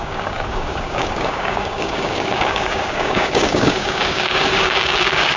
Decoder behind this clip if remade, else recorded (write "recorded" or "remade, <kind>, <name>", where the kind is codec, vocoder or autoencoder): remade, codec, DAC